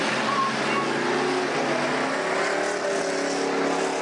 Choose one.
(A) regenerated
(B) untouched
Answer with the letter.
B